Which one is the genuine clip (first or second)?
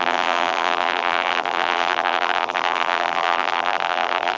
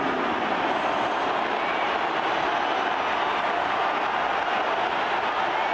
second